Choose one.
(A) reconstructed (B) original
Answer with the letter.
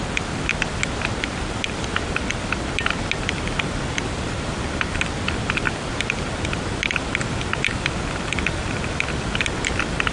B